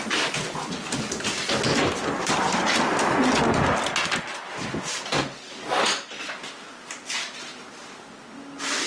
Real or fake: real